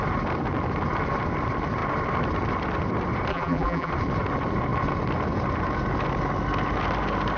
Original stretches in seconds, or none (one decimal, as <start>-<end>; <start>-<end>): 0.0-3.3; 3.9-7.4